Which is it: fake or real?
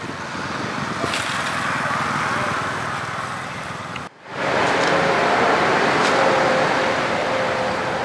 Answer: real